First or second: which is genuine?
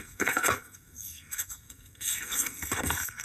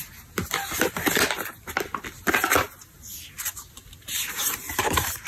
second